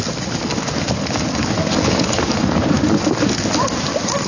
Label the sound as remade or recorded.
recorded